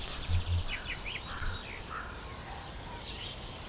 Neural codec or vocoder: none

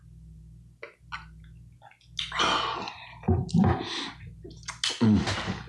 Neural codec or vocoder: none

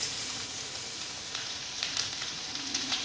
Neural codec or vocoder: vocoder, Vocos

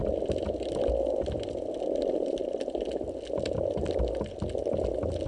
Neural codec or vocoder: none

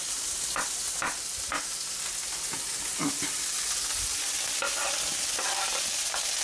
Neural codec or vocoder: none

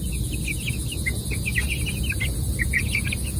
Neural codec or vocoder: none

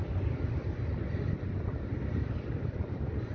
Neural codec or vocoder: none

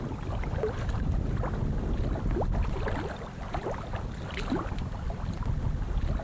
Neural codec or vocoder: none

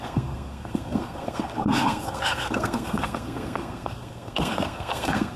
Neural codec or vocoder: codec, SNAC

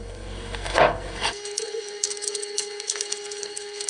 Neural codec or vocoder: codec, SNAC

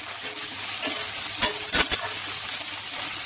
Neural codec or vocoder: none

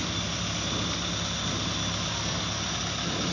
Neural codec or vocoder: none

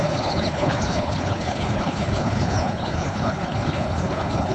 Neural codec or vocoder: codec, HILCodec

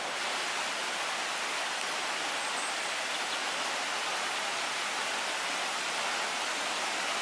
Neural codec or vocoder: none